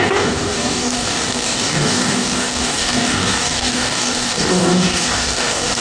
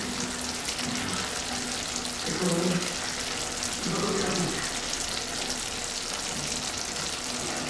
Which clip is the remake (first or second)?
first